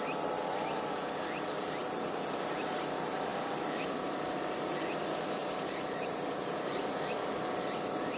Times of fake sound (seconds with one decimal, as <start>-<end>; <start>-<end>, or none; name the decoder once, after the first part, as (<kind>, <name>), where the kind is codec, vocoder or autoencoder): 5.4-7.0 (vocoder, BigVGAN v2)